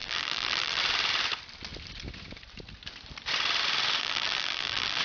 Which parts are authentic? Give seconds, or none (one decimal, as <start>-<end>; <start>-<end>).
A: 0.8-4.0